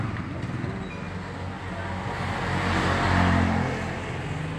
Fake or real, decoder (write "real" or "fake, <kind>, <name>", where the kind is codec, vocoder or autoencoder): real